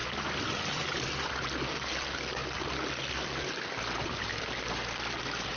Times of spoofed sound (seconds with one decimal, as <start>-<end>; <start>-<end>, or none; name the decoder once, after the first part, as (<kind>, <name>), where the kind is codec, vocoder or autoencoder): none